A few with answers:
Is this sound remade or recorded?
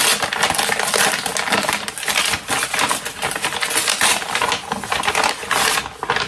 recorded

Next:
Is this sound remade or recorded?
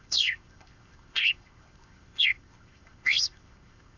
remade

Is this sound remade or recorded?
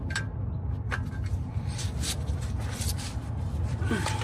recorded